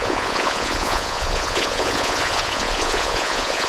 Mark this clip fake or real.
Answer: fake